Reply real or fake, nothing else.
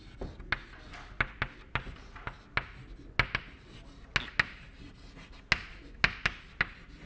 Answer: real